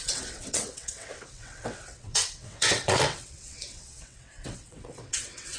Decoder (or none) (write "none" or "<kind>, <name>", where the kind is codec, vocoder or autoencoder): vocoder, WaveNeXt